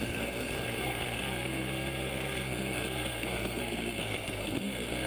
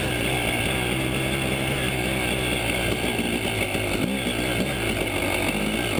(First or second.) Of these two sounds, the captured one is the second